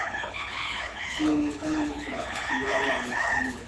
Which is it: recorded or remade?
remade